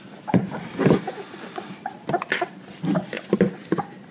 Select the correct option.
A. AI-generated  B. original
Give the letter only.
B